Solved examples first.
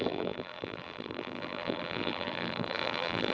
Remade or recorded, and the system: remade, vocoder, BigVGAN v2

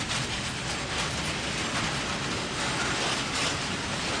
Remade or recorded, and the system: recorded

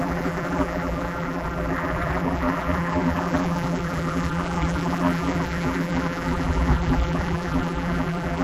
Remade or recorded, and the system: remade, vocoder, BigVGAN v2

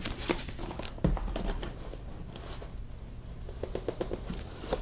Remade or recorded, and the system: recorded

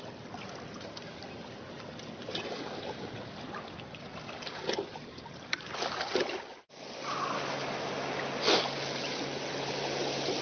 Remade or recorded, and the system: recorded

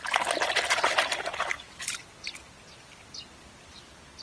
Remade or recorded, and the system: recorded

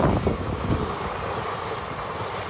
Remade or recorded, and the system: recorded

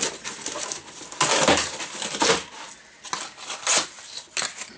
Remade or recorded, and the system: recorded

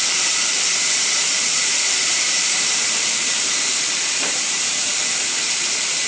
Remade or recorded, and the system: remade, vocoder, BigVGAN v2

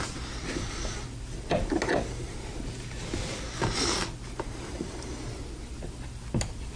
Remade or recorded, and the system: recorded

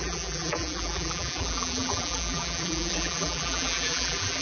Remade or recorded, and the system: remade, vocoder, BigVGAN v2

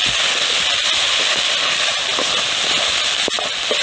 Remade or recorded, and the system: recorded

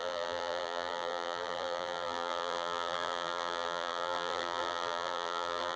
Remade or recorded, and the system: remade, vocoder, BigVGAN v2